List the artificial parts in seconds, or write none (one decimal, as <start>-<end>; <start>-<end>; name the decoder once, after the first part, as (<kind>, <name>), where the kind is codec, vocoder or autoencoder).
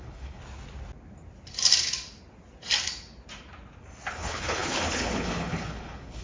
0.0-0.4 (codec, HILCodec); 4.1-6.2